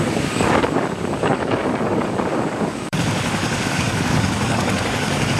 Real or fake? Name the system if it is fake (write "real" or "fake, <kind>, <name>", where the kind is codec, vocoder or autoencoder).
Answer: fake, codec, DAC